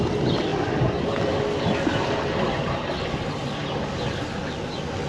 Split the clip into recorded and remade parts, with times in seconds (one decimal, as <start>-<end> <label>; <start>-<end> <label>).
0.0-5.1 recorded